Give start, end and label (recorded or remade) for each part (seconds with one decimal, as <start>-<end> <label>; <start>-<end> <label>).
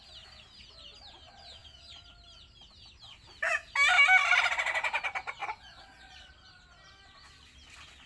0.0-5.4 recorded; 5.4-6.3 remade; 6.3-8.1 recorded